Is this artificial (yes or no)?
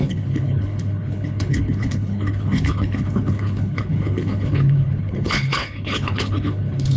yes